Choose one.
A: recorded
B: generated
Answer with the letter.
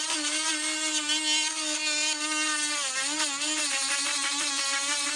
A